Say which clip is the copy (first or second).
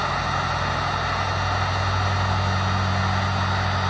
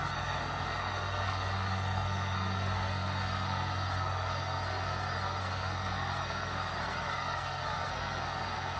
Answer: second